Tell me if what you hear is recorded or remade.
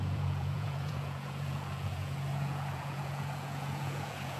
remade